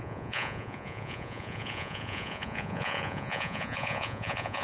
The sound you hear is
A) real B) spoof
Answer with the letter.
B